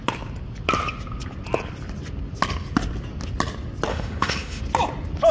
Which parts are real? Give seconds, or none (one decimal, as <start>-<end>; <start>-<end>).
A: 0.0-3.9; 4.6-5.3